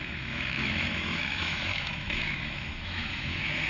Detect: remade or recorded remade